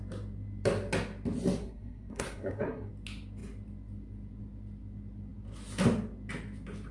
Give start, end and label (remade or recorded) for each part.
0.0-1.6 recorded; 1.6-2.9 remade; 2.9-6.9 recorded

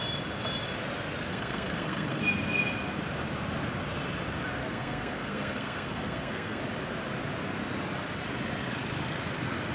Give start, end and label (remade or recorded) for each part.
0.0-1.3 recorded; 1.3-2.2 remade; 2.2-4.6 recorded; 4.6-6.6 remade; 6.6-9.7 recorded

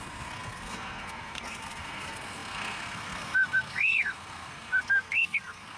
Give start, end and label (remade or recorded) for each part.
0.0-5.8 remade

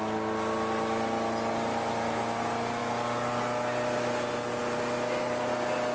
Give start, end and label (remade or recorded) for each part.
0.0-5.9 recorded

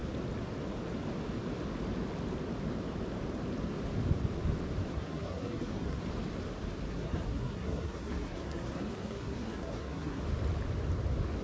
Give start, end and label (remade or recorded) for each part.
0.0-4.9 recorded; 4.9-6.0 remade; 6.0-6.9 recorded; 6.9-10.2 remade; 10.2-11.4 recorded

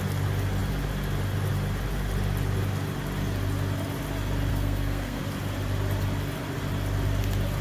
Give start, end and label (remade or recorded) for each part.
0.0-4.5 recorded; 4.5-5.2 remade; 5.2-7.6 recorded